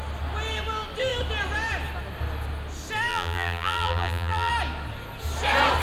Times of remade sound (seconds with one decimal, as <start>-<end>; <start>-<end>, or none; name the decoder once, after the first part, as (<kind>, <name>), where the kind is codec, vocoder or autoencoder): 3.1-4.5 (vocoder, BigVGAN v2)

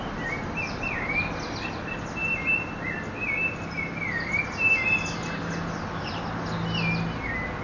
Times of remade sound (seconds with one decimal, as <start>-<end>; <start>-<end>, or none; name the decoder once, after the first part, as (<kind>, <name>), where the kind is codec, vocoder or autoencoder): none

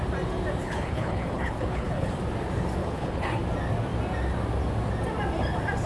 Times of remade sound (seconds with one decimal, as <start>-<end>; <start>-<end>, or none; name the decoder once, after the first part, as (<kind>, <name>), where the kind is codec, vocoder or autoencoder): 0.6-2.1 (codec, HILCodec); 2.8-3.4

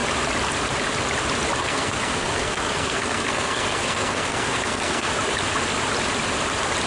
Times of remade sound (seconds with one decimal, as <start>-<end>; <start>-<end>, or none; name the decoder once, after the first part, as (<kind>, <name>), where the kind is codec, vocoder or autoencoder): 1.6-5.1 (codec, SNAC)

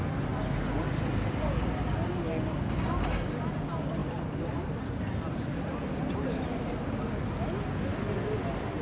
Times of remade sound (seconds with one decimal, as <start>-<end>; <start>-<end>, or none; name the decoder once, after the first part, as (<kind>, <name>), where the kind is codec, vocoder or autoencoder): none